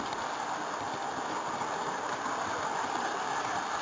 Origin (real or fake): real